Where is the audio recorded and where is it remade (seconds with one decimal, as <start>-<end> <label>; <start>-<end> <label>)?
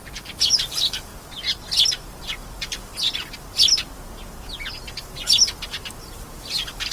0.0-1.1 remade; 1.1-1.9 recorded; 1.9-2.9 remade; 2.9-6.0 recorded; 6.0-6.9 remade